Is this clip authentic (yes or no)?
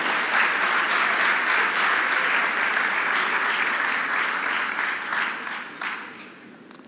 yes